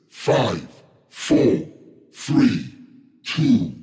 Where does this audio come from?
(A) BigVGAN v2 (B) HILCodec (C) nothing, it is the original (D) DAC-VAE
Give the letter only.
C